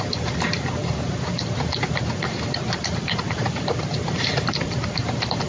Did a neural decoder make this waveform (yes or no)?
yes